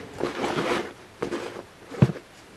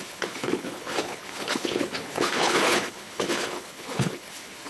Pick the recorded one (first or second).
first